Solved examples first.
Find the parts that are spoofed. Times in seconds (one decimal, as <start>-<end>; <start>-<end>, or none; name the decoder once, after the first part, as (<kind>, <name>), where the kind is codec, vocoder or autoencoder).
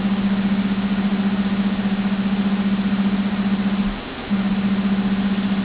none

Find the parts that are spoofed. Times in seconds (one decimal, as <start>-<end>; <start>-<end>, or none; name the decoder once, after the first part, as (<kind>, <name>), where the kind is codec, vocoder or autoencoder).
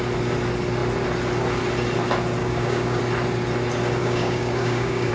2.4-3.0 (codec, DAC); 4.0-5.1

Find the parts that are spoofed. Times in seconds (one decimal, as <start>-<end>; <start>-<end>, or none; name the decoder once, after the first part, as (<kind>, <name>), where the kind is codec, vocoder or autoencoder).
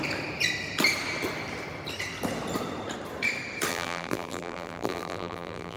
3.7-5.8 (vocoder, BigVGAN v2)